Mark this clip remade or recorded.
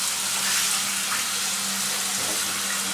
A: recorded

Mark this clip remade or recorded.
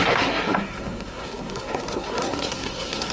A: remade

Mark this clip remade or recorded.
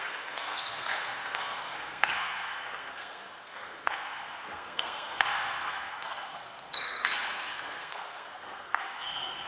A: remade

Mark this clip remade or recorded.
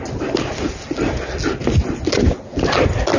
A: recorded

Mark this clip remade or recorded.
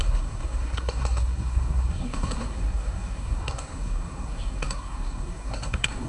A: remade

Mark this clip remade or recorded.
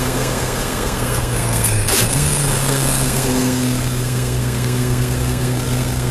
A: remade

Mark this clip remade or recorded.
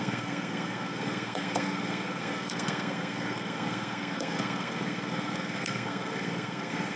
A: remade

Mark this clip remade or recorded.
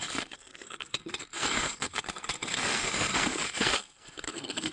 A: remade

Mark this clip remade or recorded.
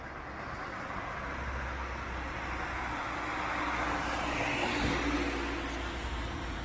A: recorded